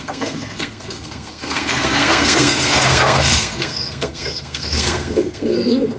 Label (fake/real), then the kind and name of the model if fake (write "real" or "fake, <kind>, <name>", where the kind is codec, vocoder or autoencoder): fake, codec, SNAC